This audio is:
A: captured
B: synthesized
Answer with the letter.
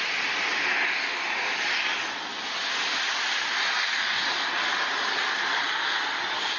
A